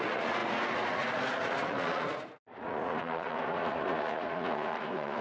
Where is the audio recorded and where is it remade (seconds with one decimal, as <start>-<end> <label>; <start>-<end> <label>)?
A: 0.0-5.2 remade

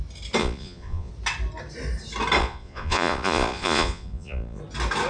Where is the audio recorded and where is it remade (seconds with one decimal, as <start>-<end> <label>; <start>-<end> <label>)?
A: 0.0-0.4 recorded; 0.4-1.1 remade; 1.1-2.4 recorded; 2.4-4.6 remade; 4.6-5.1 recorded

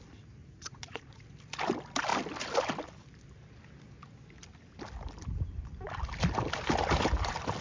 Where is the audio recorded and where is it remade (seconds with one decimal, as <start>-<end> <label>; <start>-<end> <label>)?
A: 0.0-0.4 recorded; 0.4-1.2 remade; 1.2-7.6 recorded

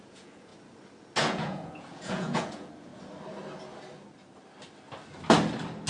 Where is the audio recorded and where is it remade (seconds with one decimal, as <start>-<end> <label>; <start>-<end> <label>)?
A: 0.0-0.5 remade; 0.5-1.2 recorded; 1.2-2.9 remade; 2.9-5.9 recorded

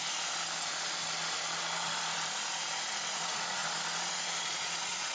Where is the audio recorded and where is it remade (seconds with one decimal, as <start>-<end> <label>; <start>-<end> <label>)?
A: 0.0-3.1 recorded; 3.1-3.6 remade; 3.6-4.1 recorded; 4.1-5.1 remade

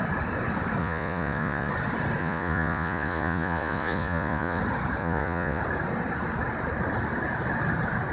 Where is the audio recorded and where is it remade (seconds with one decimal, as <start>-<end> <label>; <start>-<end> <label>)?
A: 0.0-0.8 recorded; 0.8-1.7 remade; 1.7-2.2 recorded; 2.2-4.6 remade; 4.6-5.0 recorded; 5.0-5.6 remade; 5.6-8.1 recorded

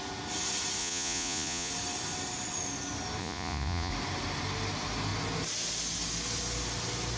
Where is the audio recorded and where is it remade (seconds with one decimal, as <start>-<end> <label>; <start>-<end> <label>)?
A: 0.0-0.8 recorded; 0.8-1.7 remade; 1.7-3.2 recorded; 3.2-3.9 remade; 3.9-7.2 recorded

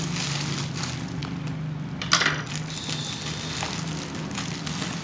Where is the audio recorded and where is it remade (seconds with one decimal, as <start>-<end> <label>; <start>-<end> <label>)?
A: 0.0-5.0 recorded